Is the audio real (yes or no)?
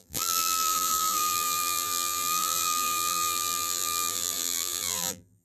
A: no